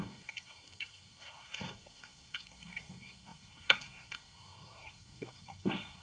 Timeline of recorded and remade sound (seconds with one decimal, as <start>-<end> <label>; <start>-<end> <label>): 0.0-6.0 remade